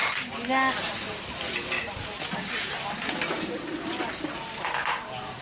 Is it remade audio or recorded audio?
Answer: recorded